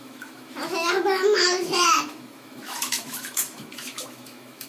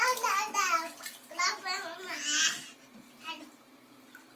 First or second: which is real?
second